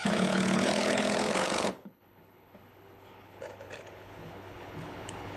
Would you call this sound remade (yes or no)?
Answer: yes